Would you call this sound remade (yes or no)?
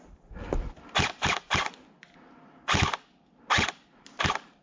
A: no